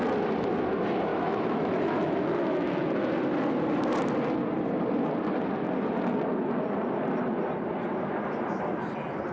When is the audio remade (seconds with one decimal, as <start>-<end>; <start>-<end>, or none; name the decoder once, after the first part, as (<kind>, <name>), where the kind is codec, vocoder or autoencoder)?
1.1-3.1 (autoencoder, DAC-VAE)